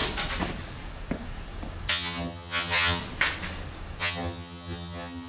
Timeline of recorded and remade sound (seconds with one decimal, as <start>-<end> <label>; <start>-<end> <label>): 0.0-1.9 recorded; 1.9-3.0 remade; 3.0-4.0 recorded; 4.0-5.3 remade